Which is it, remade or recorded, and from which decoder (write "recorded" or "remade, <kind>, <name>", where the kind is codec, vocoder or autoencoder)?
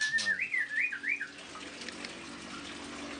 recorded